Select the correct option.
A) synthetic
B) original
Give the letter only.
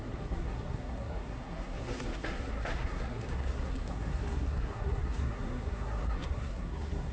A